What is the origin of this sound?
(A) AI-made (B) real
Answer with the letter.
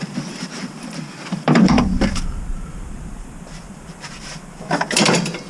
A